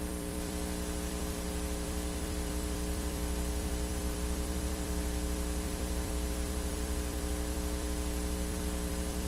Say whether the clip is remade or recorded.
remade